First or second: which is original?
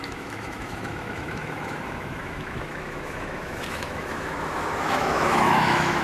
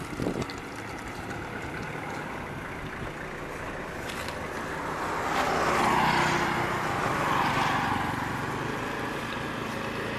second